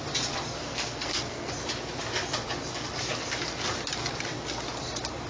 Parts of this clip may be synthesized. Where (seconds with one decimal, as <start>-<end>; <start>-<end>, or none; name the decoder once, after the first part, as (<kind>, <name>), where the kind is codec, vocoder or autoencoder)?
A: 0.6-1.5 (codec, SNAC)